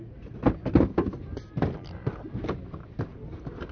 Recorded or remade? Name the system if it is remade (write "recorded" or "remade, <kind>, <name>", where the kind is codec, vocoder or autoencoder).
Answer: recorded